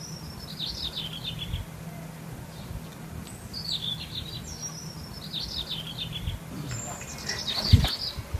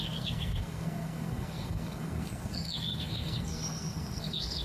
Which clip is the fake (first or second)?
second